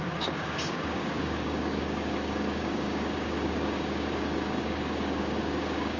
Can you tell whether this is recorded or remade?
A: remade